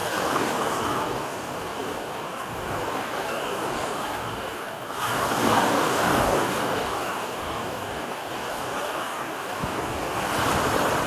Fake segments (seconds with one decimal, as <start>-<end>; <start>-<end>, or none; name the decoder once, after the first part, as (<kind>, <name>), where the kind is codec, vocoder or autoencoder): 0.0-10.3 (codec, DAC)